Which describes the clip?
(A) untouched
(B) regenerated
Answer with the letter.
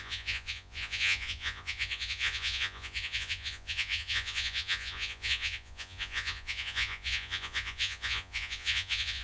B